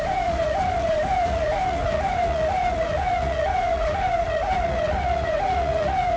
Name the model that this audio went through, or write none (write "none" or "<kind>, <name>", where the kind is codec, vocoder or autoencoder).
vocoder, Vocos